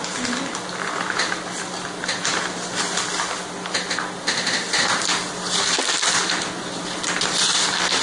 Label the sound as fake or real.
real